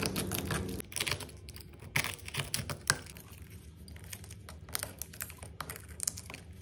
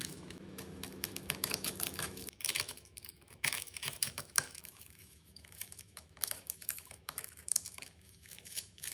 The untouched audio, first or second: first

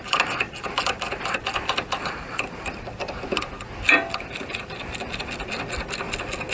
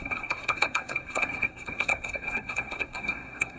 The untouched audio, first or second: first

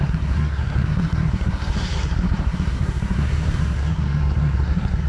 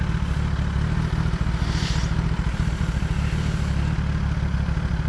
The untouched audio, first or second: second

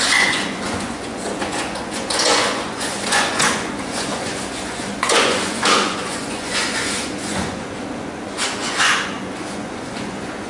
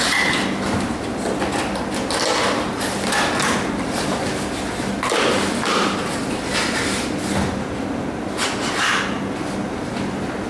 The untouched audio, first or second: second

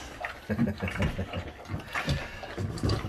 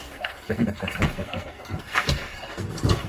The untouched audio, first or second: first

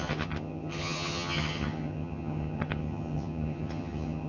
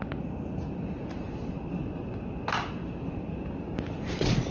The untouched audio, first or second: second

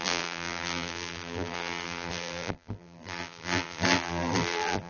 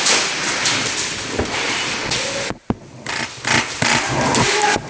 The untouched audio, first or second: second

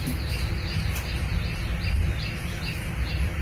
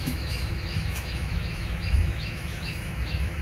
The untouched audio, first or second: first